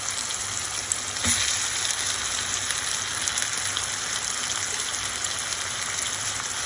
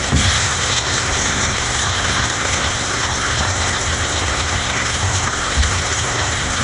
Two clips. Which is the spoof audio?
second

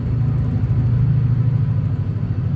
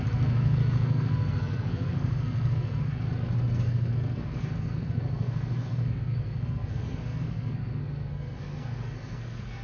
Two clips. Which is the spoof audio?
second